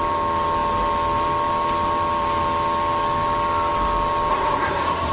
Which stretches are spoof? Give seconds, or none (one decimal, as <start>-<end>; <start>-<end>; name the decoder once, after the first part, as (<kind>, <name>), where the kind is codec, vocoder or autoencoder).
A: 4.3-5.1 (codec, SNAC)

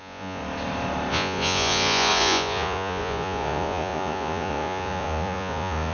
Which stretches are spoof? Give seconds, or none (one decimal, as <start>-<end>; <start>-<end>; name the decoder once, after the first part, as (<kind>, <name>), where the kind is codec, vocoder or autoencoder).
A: 0.0-0.4 (vocoder, Vocos); 1.1-5.9

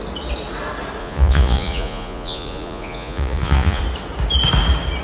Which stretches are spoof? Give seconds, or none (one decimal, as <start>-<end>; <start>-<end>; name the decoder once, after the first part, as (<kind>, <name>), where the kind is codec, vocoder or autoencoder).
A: 1.0-3.8 (vocoder, Vocos)

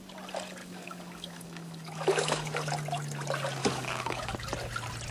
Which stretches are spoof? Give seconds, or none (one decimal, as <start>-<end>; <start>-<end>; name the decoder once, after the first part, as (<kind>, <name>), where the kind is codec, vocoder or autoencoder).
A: 0.6-2.7 (codec, DAC); 3.6-4.3

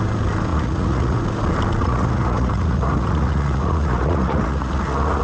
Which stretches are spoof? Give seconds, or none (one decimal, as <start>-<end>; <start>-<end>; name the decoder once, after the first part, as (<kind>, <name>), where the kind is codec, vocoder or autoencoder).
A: 0.5-1.2 (vocoder, Vocos); 1.8-5.2

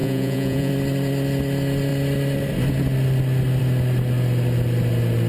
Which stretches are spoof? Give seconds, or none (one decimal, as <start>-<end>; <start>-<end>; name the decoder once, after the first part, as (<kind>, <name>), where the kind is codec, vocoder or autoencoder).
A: 0.0-0.7 (vocoder, Vocos)

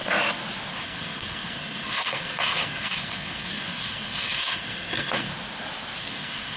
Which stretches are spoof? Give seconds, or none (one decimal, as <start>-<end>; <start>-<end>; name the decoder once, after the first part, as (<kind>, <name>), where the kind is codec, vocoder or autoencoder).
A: 0.8-5.3 (codec, SNAC); 6.0-6.6

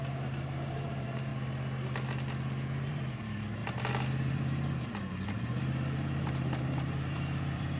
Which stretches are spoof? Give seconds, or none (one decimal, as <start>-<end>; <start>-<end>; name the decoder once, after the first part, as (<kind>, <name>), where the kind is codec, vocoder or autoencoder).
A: 0.0-1.3 (vocoder, BigVGAN v2); 2.9-3.6; 4.3-7.8